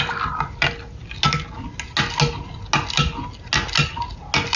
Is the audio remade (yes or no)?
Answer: no